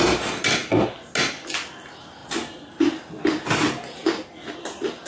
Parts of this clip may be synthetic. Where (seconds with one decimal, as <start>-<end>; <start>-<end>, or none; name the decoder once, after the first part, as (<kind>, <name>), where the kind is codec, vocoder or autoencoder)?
none